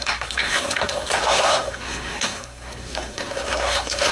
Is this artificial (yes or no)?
yes